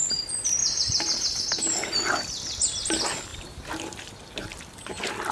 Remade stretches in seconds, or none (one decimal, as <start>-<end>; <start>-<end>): 0.6-1.4; 3.3-4.1